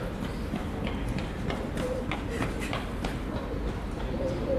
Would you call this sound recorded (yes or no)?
yes